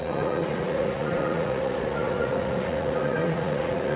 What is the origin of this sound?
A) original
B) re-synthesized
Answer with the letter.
B